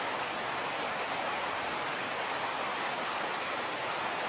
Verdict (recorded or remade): recorded